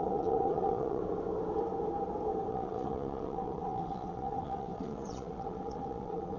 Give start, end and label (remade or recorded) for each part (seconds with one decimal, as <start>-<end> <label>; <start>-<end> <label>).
0.0-1.0 remade; 1.0-2.5 recorded; 2.5-6.4 remade